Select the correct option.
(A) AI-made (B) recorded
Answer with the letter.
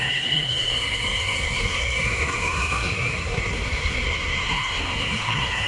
A